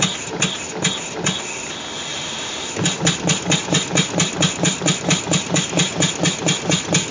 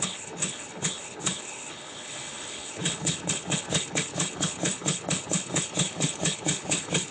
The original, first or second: first